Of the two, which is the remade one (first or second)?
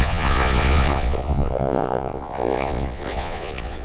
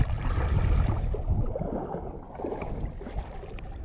first